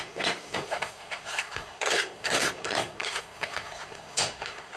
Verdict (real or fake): fake